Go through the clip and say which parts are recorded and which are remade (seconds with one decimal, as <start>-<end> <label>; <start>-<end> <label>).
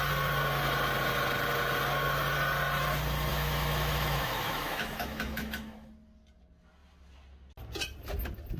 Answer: 0.0-3.3 recorded; 3.3-5.9 remade; 5.9-8.6 recorded